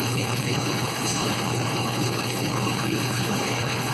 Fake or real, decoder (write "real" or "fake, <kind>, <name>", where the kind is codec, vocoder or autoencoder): fake, codec, HILCodec